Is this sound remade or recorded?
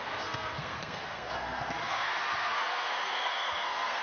remade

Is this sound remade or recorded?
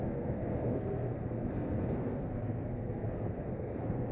remade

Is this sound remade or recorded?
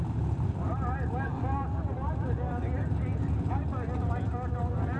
recorded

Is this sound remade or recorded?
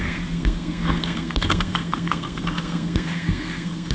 remade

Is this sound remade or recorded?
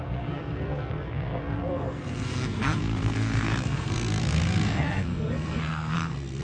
remade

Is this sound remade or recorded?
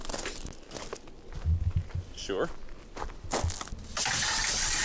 recorded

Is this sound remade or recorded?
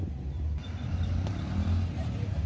recorded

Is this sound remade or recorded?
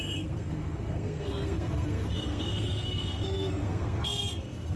remade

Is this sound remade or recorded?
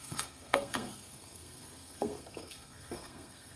remade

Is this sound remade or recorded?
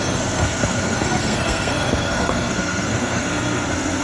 remade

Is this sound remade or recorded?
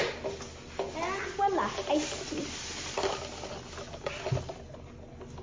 recorded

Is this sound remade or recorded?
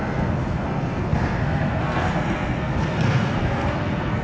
remade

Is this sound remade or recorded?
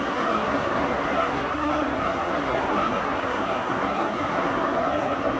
remade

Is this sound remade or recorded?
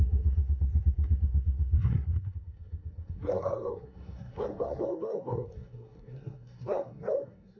remade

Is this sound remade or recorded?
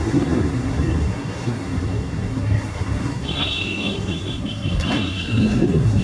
remade